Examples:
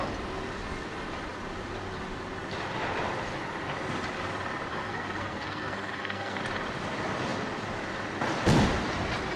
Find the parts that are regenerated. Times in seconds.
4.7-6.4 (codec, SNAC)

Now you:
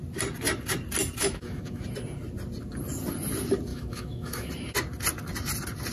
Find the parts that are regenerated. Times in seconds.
1.2-1.8 (autoencoder, DAC-VAE); 3.7-4.5

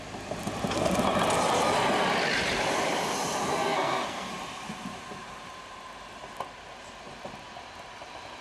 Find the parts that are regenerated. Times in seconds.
3.5-4.3 (codec, SNAC)